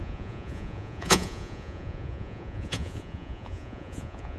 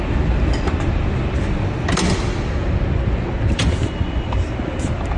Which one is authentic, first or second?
second